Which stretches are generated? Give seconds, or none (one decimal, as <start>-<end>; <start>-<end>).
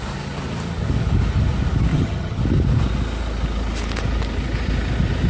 1.9-2.4